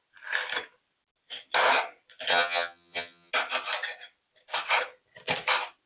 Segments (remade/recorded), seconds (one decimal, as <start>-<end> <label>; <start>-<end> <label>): 0.0-2.3 recorded; 2.3-3.3 remade; 3.3-5.9 recorded